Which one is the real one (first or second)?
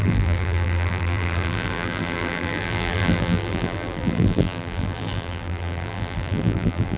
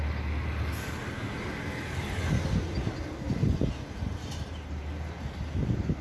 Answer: second